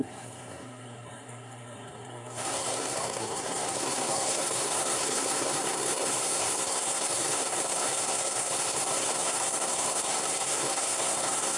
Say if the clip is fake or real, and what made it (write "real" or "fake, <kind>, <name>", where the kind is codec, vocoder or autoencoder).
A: fake, codec, SNAC